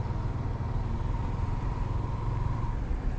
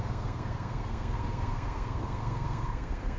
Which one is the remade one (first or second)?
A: second